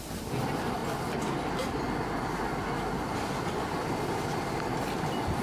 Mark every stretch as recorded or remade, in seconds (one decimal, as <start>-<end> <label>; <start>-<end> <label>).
0.0-5.4 recorded